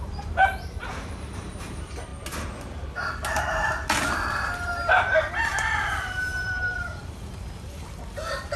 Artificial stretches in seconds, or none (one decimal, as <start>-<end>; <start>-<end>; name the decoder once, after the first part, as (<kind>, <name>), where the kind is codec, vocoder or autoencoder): 0.0-2.1 (vocoder, BigVGAN v2); 5.3-8.6